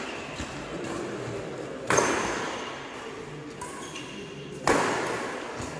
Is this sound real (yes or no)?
yes